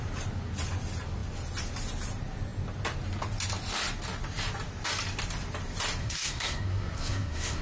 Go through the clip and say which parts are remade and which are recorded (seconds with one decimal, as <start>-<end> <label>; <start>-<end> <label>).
0.0-6.0 recorded; 6.0-7.6 remade